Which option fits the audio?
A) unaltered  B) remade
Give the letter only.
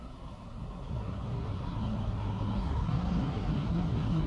B